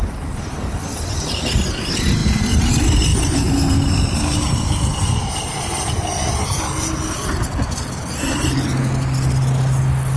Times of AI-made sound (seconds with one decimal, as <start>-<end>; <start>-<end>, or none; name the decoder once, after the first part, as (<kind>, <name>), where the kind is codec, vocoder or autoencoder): none